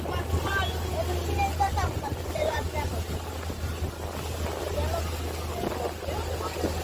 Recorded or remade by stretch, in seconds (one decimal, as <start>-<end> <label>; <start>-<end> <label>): 0.0-0.9 recorded; 0.9-2.9 remade; 2.9-6.8 recorded